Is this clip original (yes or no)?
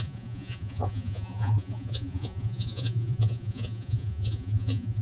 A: no